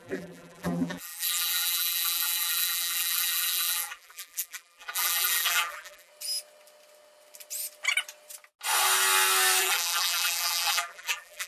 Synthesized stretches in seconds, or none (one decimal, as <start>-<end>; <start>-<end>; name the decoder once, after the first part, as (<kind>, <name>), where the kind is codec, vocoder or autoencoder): 0.0-6.1 (vocoder, BigVGAN v2); 9.6-11.5